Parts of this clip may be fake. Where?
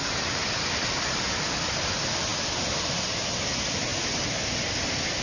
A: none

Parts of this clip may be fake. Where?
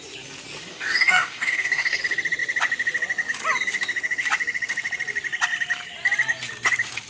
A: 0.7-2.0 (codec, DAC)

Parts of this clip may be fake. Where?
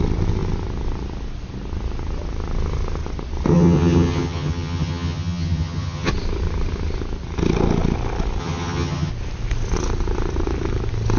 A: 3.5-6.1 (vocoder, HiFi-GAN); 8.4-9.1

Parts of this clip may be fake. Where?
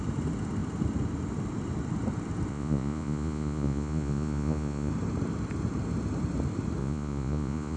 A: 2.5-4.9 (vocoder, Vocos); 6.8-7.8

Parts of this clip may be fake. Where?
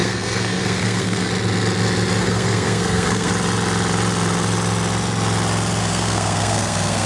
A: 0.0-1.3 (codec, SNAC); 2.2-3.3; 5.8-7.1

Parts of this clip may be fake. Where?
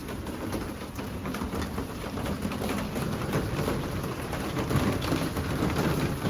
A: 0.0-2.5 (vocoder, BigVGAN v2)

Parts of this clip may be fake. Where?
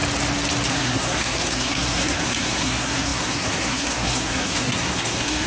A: 0.7-5.5 (codec, SNAC)